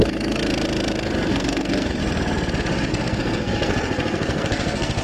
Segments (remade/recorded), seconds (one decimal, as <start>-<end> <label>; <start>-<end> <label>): 0.0-0.4 remade; 0.4-1.3 recorded; 1.3-2.0 remade; 2.0-2.9 recorded; 2.9-5.0 remade